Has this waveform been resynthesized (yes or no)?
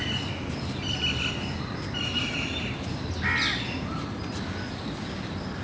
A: no